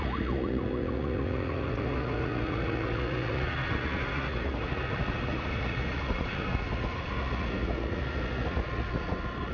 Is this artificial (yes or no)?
yes